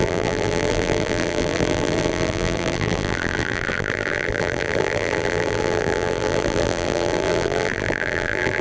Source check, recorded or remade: remade